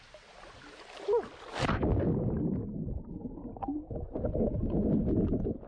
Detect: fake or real real